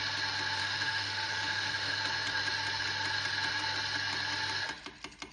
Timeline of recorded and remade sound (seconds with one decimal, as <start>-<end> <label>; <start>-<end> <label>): 0.0-0.6 recorded; 0.6-2.0 remade; 2.0-5.3 recorded